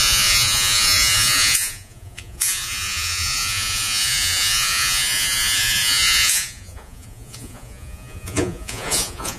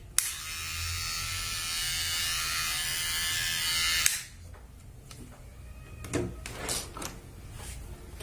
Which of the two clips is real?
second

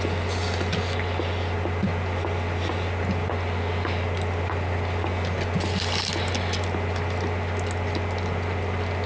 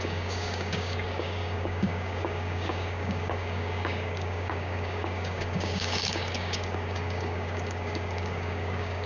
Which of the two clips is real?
first